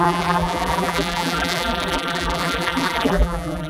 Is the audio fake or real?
fake